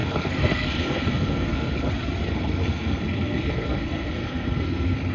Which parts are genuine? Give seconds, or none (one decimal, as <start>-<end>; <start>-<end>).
1.9-2.3